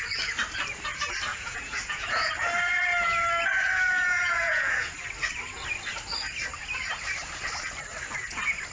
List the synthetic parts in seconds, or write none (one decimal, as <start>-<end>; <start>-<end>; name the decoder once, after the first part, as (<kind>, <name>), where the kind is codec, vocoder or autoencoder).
1.3-2.3 (vocoder, Vocos); 3.5-4.9